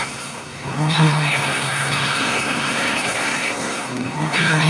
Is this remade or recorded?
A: remade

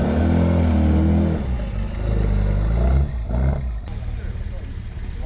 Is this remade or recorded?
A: recorded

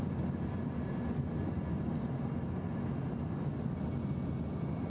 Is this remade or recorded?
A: recorded